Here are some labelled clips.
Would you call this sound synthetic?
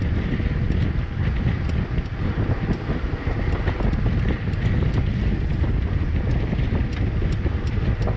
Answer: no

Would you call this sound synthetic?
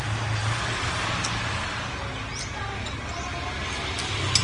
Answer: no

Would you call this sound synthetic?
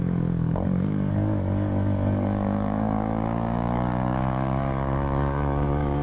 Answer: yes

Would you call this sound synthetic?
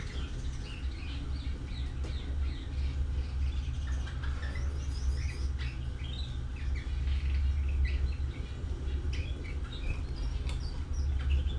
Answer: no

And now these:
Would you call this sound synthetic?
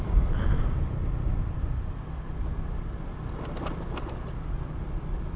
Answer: no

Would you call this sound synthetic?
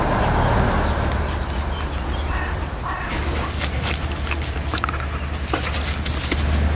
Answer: no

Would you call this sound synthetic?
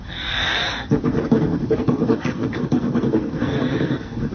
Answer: yes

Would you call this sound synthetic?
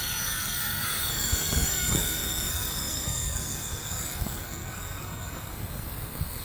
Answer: yes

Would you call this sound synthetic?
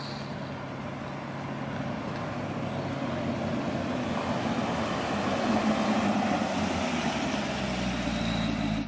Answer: no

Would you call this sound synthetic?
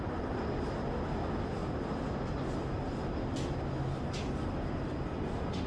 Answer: no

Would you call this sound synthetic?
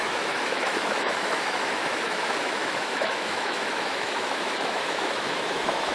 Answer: yes